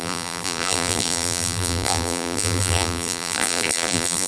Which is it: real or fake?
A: fake